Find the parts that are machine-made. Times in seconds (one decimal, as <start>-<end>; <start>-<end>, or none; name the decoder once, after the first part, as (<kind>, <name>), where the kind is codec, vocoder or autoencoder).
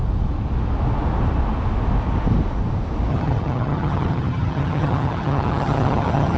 3.1-6.4 (vocoder, HiFi-GAN)